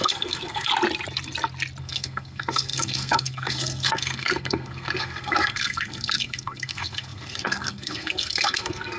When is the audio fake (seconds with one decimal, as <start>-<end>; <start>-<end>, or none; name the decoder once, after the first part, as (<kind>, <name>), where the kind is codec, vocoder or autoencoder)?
0.0-0.7 (codec, SNAC); 1.8-9.0